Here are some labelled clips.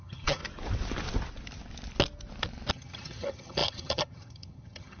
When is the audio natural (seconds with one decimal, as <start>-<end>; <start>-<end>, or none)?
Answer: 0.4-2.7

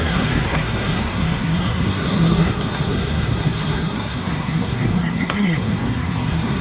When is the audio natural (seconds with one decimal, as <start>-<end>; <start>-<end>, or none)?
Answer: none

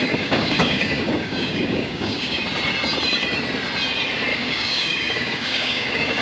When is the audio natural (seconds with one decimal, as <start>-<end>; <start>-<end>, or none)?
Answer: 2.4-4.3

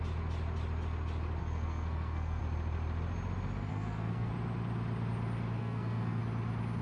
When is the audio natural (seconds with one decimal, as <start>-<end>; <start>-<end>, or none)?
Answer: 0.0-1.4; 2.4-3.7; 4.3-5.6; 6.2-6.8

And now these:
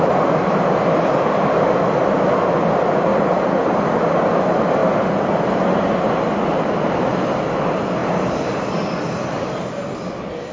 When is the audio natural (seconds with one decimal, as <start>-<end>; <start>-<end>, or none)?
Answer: 0.0-10.5

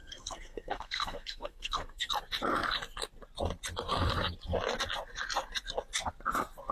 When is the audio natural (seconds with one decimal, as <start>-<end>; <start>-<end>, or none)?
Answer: 2.1-6.7

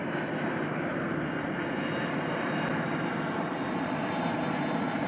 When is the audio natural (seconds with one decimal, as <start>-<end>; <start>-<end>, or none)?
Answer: 0.0-5.1